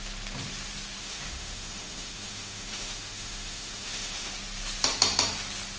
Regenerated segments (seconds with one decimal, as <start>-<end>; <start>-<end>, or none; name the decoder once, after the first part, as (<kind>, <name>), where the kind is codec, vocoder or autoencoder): 1.0-4.3 (autoencoder, DAC-VAE)